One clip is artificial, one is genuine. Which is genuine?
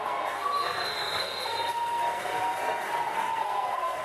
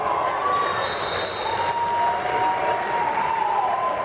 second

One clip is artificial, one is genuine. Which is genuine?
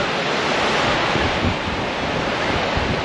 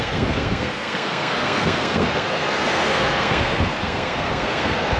first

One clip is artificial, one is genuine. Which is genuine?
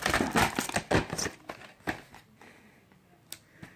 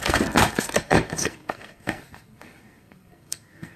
first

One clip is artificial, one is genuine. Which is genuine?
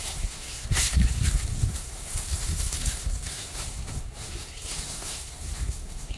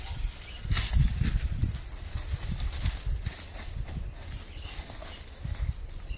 second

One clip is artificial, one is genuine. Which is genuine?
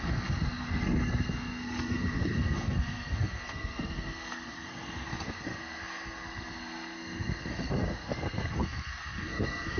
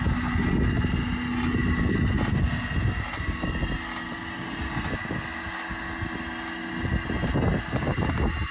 second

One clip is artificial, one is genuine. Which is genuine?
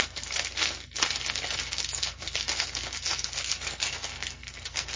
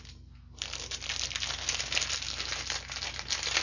second